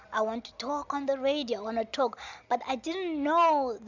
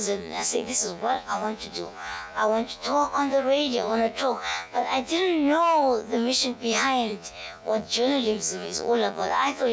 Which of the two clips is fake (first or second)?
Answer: second